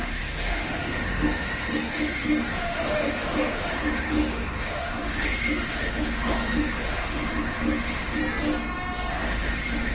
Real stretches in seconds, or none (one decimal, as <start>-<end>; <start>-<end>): 8.2-9.1